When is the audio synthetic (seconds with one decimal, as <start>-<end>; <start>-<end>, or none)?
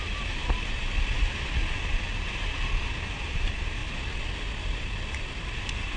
0.0-3.8; 4.8-6.0